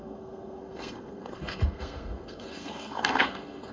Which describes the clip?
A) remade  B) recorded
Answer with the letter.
A